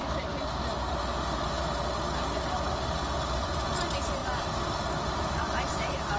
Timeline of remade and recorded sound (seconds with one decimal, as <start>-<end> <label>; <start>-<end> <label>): 0.0-4.2 recorded; 4.2-5.4 remade; 5.4-6.2 recorded